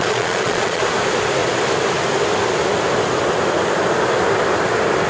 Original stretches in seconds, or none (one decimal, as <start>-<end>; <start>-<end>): 0.8-5.1